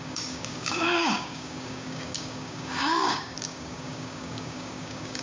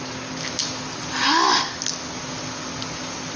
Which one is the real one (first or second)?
second